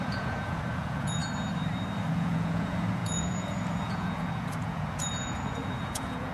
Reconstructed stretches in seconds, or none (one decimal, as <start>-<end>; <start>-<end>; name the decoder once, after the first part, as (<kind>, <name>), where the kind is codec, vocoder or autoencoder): 0.0-1.2 (vocoder, Vocos); 2.1-6.3